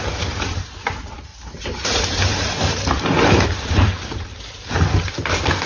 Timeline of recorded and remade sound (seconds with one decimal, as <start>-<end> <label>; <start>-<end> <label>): 0.0-5.7 remade